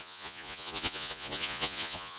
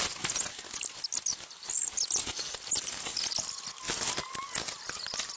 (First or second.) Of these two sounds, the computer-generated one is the first